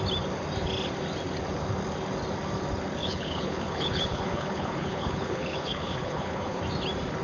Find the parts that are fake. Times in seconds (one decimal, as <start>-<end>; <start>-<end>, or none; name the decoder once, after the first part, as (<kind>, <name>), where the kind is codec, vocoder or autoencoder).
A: 3.0-6.6 (codec, HILCodec)

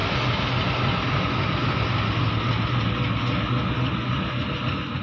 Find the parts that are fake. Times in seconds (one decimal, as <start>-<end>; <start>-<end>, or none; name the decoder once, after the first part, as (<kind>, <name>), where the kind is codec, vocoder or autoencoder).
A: none

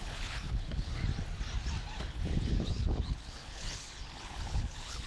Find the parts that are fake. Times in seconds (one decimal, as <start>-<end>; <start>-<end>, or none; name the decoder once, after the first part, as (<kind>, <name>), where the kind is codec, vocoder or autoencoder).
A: 0.0-1.0 (codec, HILCodec); 2.0-5.1

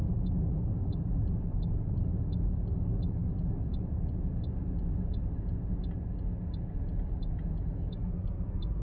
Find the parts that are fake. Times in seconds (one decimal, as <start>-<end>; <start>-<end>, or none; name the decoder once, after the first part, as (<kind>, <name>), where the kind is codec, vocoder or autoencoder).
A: none

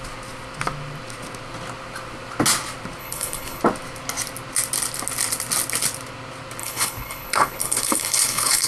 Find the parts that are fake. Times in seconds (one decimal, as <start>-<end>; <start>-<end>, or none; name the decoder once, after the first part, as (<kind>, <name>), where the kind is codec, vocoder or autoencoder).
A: 3.0-3.6 (codec, HILCodec); 6.6-8.7

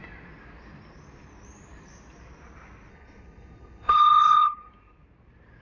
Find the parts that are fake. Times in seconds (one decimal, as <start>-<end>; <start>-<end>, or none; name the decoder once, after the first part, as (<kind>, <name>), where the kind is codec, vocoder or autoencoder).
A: 2.9-4.7 (codec, HILCodec)

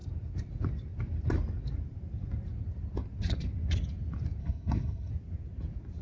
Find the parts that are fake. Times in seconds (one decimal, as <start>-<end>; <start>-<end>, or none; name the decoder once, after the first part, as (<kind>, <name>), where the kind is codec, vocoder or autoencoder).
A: 4.4-5.1 (codec, HILCodec)